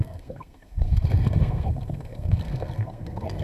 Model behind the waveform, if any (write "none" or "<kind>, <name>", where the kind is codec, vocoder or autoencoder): codec, SNAC